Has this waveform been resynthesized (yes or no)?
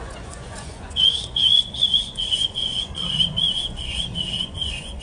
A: yes